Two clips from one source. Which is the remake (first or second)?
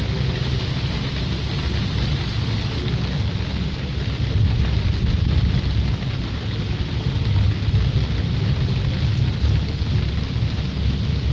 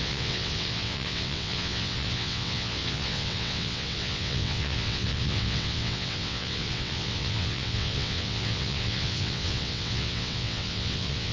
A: second